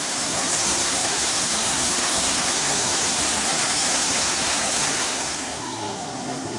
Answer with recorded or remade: remade